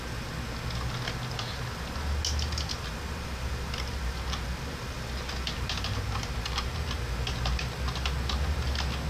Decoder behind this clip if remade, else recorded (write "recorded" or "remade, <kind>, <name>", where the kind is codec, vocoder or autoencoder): recorded